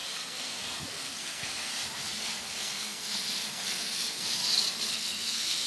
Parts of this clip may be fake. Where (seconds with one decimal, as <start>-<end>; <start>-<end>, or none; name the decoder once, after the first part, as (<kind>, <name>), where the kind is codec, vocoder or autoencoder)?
0.0-1.7 (codec, SNAC); 2.2-4.4; 4.9-5.7